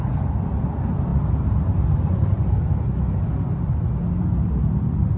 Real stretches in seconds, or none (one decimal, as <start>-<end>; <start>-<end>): 0.0-5.2